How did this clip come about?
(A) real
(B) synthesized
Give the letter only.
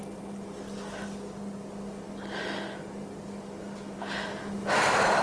A